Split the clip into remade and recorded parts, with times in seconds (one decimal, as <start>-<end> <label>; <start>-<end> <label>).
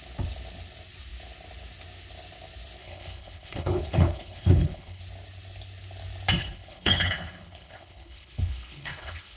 0.0-2.8 recorded; 2.8-5.0 remade; 5.0-6.4 recorded; 6.4-9.4 remade